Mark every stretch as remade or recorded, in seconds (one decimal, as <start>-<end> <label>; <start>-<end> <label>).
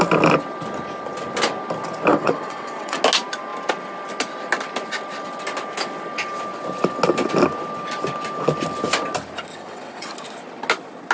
0.0-2.1 recorded; 2.1-3.0 remade; 3.0-9.5 recorded; 9.5-10.1 remade; 10.1-11.1 recorded